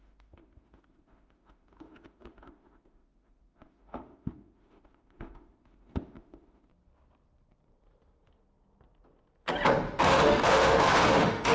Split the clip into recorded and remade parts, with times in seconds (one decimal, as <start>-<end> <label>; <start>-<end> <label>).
0.0-6.7 remade; 6.7-10.0 recorded; 10.0-11.5 remade